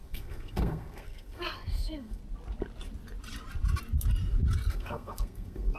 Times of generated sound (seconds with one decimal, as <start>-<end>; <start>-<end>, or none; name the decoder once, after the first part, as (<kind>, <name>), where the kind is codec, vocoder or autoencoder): 0.0-2.2 (codec, SNAC); 4.7-5.8